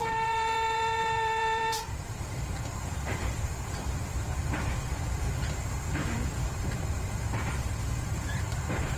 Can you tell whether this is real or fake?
fake